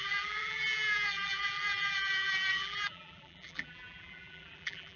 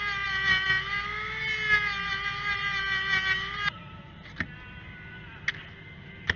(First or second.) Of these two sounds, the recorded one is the second